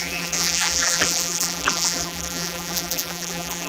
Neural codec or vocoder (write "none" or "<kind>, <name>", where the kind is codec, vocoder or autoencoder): vocoder, BigVGAN v2